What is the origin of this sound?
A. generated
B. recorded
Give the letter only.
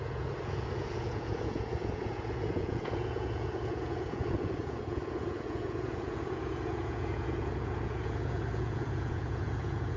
A